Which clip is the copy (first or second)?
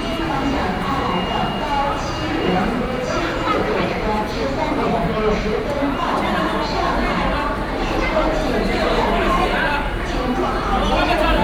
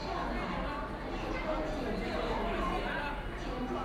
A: first